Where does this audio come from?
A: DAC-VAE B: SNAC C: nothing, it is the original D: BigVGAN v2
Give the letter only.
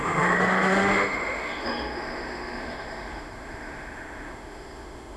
A